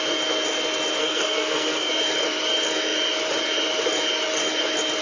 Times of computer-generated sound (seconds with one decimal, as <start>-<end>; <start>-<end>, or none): 1.0-1.9